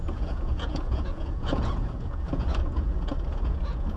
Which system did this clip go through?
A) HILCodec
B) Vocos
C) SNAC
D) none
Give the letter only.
B